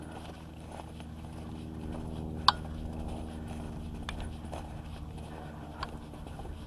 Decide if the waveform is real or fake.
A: real